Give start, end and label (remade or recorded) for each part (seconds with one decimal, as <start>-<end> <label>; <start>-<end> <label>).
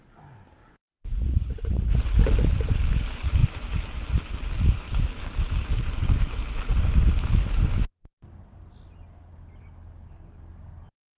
0.0-0.6 recorded; 0.6-2.2 remade; 2.2-11.2 recorded